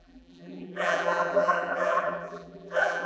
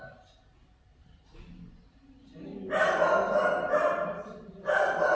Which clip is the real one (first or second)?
second